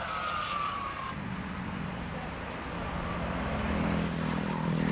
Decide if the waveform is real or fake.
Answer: fake